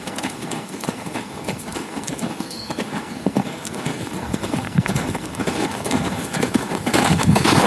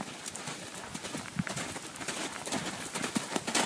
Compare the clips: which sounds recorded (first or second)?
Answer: second